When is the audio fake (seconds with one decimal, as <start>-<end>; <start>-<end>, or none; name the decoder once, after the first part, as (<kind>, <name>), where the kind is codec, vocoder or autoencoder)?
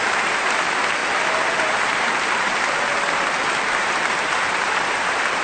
0.0-1.0 (vocoder, BigVGAN v2); 4.2-5.4